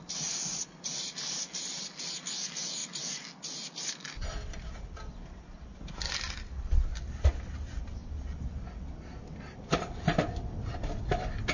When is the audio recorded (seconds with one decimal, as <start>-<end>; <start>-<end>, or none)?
0.0-11.5